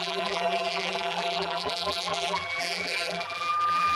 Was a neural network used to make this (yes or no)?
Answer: yes